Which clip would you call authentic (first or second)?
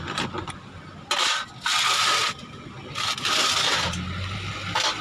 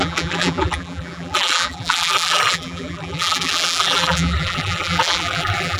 first